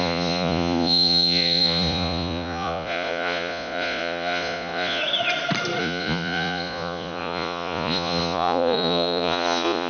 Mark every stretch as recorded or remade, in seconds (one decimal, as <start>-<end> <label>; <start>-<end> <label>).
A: 0.0-5.0 remade; 5.0-5.8 recorded; 5.8-9.9 remade